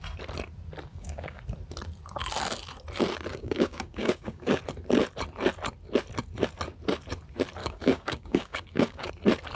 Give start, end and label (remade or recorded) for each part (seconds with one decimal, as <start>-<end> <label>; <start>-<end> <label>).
0.0-0.9 recorded; 0.9-1.4 remade; 1.4-3.3 recorded; 3.3-4.6 remade; 4.6-7.6 recorded; 7.6-9.1 remade; 9.1-9.6 recorded